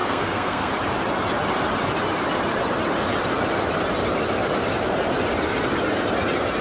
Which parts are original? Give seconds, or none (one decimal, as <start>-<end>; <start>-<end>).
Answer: 0.7-6.6